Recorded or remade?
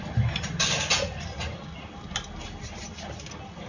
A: recorded